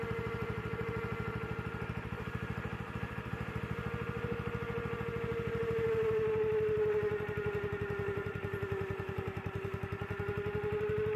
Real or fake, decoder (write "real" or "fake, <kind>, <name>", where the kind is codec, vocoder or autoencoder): real